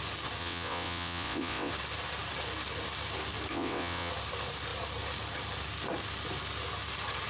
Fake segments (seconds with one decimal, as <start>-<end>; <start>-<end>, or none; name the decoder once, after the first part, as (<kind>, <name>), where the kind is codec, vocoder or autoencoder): 0.4-1.7 (vocoder, WaveNeXt); 3.5-4.1